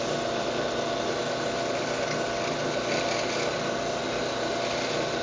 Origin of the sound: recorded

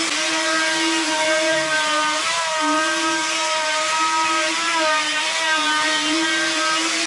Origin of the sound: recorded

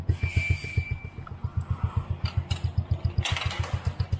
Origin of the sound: recorded